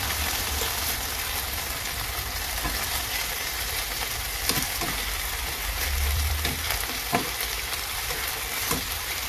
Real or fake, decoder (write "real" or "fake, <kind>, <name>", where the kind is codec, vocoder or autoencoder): fake, vocoder, BigVGAN v2